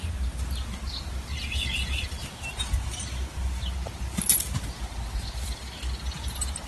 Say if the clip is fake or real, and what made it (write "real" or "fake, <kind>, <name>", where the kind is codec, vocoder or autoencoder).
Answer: real